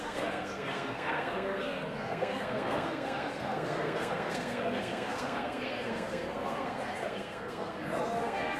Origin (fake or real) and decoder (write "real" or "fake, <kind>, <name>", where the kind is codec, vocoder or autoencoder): fake, codec, SNAC